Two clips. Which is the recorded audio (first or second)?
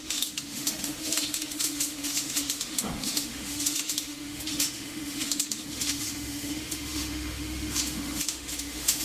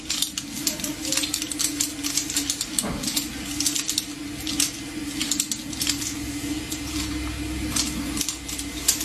second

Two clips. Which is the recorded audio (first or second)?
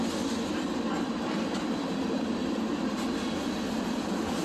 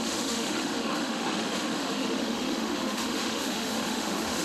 first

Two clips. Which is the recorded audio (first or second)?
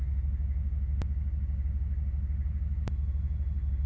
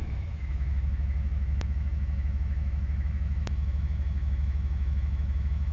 first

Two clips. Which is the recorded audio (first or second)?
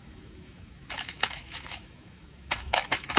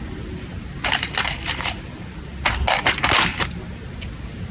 second